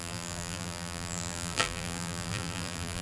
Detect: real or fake fake